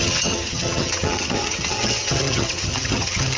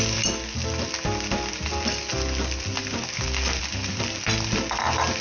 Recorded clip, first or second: second